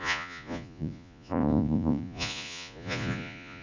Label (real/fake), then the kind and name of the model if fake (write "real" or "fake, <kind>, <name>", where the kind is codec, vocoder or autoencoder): fake, vocoder, Vocos